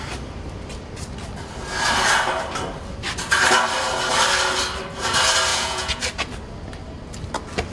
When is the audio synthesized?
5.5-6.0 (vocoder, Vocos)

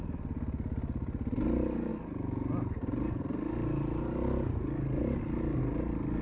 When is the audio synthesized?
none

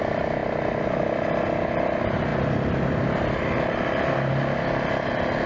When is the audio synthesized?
none

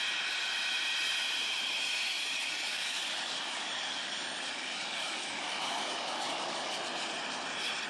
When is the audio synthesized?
2.1-6.8 (codec, DAC)

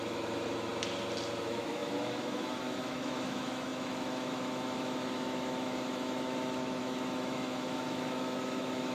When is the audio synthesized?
0.0-0.7 (autoencoder, DAC-VAE); 1.4-8.9